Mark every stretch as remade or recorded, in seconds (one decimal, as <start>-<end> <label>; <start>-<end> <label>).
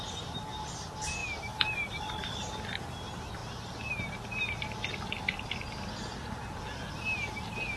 0.0-1.2 remade; 1.2-2.3 recorded; 2.3-3.4 remade; 3.4-7.8 recorded